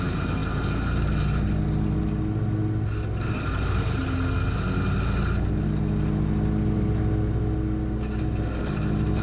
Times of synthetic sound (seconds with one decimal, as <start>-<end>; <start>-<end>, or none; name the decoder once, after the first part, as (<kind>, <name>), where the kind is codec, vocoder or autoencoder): 0.0-0.4 (vocoder, BigVGAN v2); 3.2-4.0; 8.6-9.2